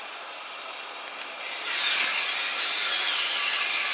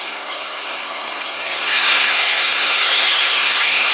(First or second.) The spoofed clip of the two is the second